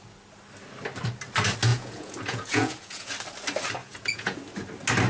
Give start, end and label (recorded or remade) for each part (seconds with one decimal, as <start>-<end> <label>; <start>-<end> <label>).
0.0-1.7 recorded; 1.7-3.1 remade; 3.1-3.8 recorded; 3.8-4.4 remade; 4.4-5.1 recorded